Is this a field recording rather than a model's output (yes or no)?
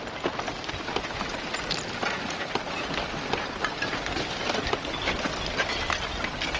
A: yes